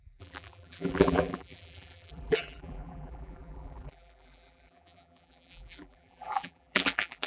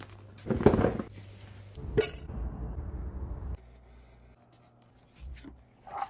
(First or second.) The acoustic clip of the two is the second